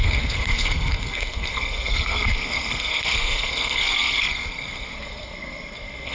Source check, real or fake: fake